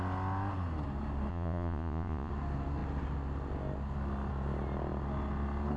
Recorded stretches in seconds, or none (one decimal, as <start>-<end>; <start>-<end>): 0.0-1.3; 2.3-5.8

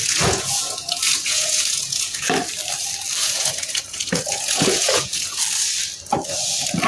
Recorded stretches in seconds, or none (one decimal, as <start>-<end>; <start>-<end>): 2.3-3.2; 5.4-6.9

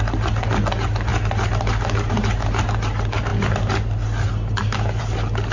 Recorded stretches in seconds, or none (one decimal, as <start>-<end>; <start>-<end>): 0.0-5.5

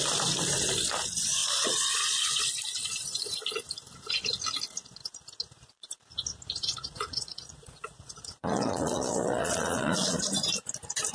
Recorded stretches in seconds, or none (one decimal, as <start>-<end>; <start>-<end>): 0.0-1.4; 2.4-6.6; 10.2-11.1

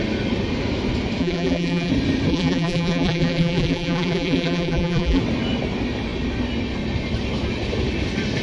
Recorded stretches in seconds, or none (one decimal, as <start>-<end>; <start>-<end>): 0.0-1.2; 1.9-2.3; 5.2-8.4

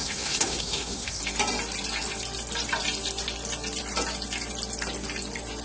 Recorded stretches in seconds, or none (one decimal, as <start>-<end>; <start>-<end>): 1.2-5.6

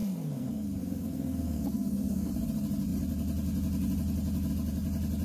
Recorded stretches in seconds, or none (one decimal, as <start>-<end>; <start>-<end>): 2.3-5.2

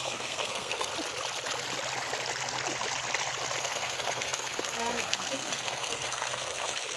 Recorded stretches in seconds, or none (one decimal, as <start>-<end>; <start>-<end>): 0.9-3.6